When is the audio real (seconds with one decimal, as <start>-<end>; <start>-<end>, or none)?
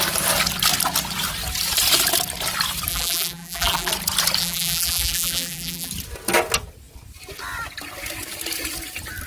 0.0-2.9; 3.9-4.4; 5.9-9.3